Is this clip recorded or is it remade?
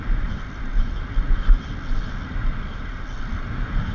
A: recorded